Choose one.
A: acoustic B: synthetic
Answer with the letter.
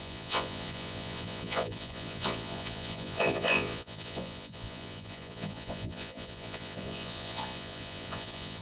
B